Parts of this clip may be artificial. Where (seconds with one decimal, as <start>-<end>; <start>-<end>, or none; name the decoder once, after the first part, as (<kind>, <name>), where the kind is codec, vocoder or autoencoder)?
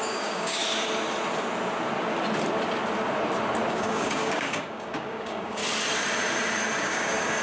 0.0-0.6 (codec, DAC); 3.7-5.6; 6.8-7.4